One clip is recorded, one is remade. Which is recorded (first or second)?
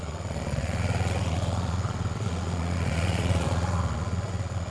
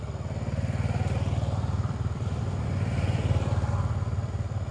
second